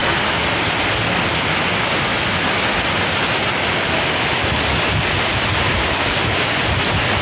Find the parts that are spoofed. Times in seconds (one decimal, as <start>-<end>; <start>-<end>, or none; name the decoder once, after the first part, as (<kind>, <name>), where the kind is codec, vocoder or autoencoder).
none